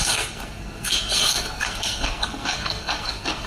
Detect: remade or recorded remade